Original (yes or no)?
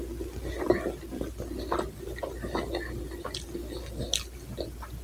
yes